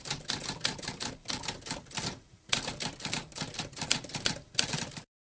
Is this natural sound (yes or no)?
no